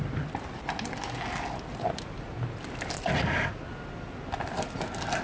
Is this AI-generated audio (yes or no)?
no